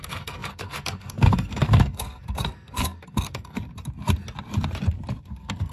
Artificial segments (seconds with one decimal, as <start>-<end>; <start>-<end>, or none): 0.0-3.7; 5.2-5.7